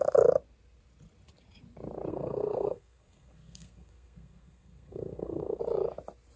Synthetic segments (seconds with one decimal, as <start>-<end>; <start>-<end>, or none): 2.1-5.6